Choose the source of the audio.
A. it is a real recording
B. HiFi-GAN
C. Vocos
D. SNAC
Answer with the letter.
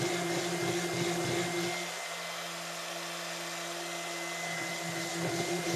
A